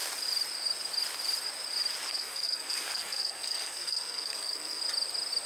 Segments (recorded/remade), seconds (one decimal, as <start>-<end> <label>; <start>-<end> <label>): 0.0-2.1 recorded; 2.1-4.8 remade; 4.8-5.5 recorded